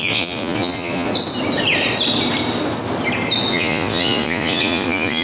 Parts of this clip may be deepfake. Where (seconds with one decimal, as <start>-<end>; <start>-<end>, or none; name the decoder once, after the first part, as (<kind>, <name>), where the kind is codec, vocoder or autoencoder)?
0.0-1.1 (vocoder, Vocos); 3.5-5.2